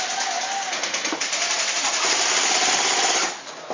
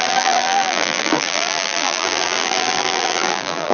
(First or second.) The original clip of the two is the first